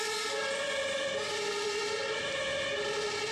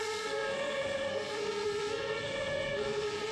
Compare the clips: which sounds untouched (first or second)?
first